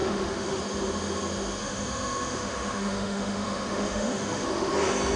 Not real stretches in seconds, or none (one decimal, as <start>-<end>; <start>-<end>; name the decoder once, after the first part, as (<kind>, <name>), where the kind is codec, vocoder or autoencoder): 0.0-0.6 (autoencoder, DAC-VAE); 1.6-4.7